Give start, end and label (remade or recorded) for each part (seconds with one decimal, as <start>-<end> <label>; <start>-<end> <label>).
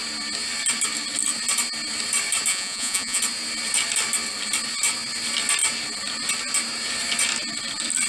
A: 0.0-2.5 recorded; 2.5-3.2 remade; 3.2-8.1 recorded